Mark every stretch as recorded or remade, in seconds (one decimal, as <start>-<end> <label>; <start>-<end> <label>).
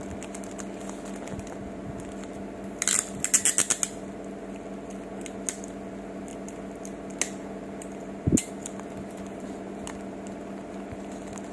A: 0.0-11.5 recorded